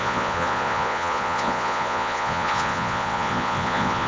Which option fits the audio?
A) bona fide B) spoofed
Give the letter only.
B